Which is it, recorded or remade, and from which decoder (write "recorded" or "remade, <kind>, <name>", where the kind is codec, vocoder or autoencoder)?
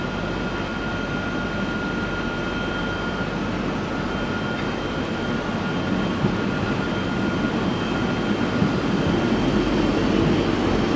recorded